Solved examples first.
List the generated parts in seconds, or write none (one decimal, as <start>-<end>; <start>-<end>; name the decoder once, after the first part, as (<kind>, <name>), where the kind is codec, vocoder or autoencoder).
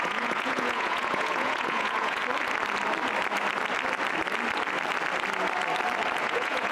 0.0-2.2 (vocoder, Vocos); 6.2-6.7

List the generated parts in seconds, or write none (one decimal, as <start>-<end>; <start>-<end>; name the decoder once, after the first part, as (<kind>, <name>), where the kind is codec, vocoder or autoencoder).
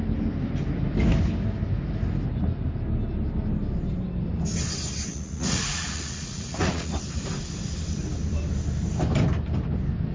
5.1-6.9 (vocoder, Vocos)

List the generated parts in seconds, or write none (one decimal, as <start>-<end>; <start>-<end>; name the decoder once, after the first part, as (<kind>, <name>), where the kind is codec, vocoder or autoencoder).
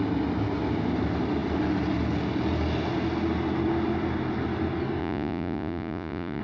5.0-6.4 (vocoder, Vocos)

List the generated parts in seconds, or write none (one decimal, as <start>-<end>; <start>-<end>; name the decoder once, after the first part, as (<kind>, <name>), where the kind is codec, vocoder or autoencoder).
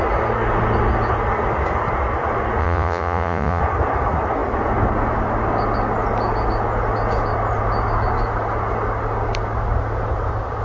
2.6-3.6 (vocoder, Vocos)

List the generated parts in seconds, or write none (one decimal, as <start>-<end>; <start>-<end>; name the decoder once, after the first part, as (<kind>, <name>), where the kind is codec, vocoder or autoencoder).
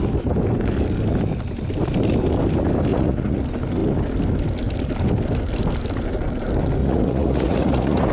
2.9-3.4 (vocoder, Vocos); 6.8-8.1